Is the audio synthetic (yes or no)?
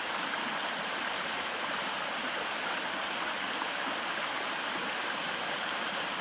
no